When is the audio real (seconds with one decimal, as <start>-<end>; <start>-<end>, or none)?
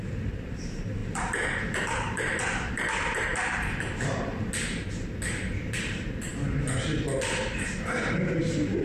4.3-5.6; 6.3-8.8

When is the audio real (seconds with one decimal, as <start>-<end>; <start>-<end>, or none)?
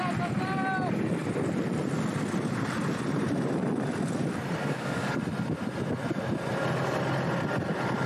0.0-4.6; 5.2-8.1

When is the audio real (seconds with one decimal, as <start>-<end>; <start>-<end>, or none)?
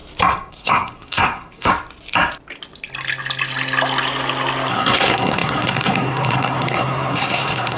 0.0-0.5; 1.7-4.7